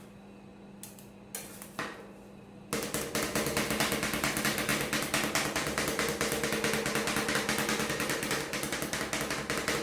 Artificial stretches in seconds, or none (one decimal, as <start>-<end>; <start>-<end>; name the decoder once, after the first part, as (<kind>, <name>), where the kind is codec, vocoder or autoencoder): none